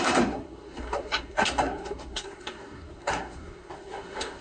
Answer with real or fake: fake